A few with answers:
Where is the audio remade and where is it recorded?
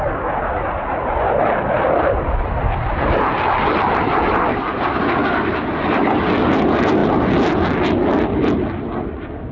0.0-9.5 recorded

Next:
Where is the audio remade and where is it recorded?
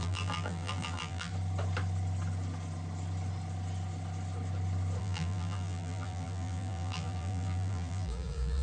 0.0-1.3 remade; 1.3-5.0 recorded; 5.0-8.6 remade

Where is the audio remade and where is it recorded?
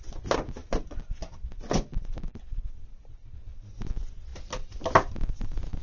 0.0-0.6 recorded; 0.6-3.3 remade; 3.3-5.8 recorded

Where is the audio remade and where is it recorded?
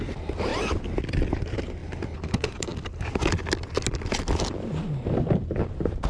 0.0-0.5 remade; 0.5-1.4 recorded; 1.4-1.8 remade; 1.8-2.3 recorded; 2.3-2.7 remade; 2.7-4.5 recorded; 4.5-6.1 remade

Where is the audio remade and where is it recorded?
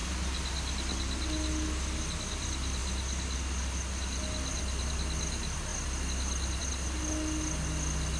0.0-8.2 recorded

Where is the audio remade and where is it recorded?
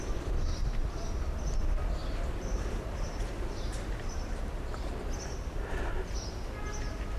0.0-0.5 recorded; 0.5-1.3 remade; 1.3-2.0 recorded; 2.0-4.9 remade; 4.9-7.2 recorded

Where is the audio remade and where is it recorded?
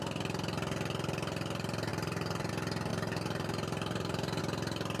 0.0-1.9 recorded; 1.9-2.5 remade; 2.5-2.9 recorded; 2.9-4.4 remade; 4.4-5.0 recorded